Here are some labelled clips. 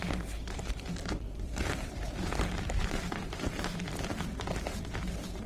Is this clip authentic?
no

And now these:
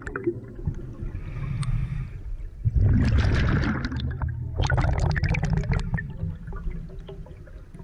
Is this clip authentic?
yes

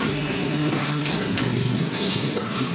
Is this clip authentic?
no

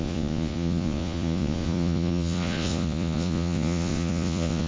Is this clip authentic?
no